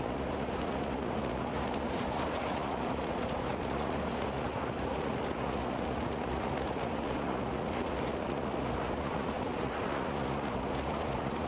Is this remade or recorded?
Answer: remade